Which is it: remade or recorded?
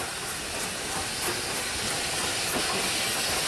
recorded